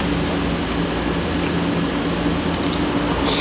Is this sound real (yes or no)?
yes